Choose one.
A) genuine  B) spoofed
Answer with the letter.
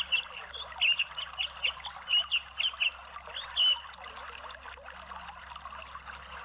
A